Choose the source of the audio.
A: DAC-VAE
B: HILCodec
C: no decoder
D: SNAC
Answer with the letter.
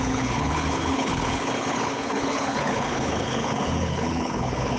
B